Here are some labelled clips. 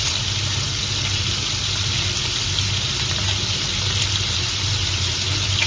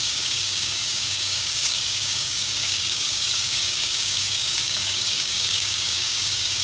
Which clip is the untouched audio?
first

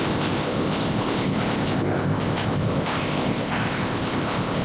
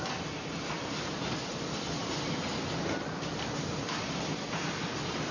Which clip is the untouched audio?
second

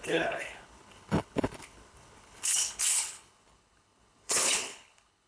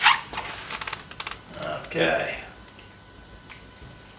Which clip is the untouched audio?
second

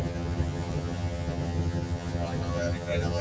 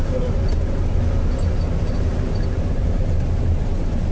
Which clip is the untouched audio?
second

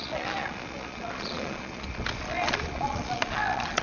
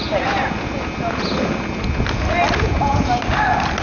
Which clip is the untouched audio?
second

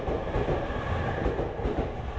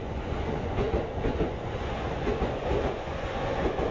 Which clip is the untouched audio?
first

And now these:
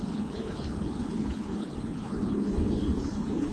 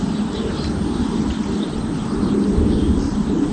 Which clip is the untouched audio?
second